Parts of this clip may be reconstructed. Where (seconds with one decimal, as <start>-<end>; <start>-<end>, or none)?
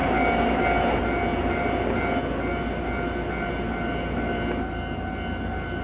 none